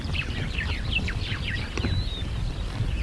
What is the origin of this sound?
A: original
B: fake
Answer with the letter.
B